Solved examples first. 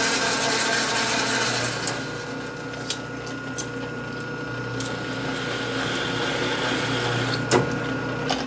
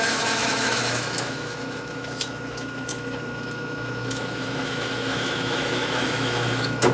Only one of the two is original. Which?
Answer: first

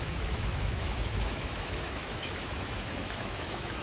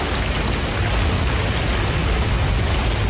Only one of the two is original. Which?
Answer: second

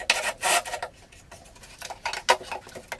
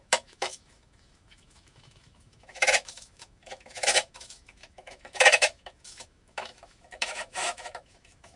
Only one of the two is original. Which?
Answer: first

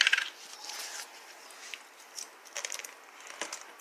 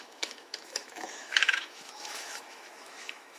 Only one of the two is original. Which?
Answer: first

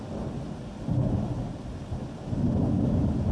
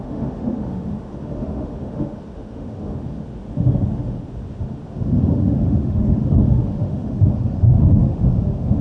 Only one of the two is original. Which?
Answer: first